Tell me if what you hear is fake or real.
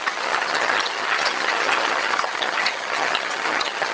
fake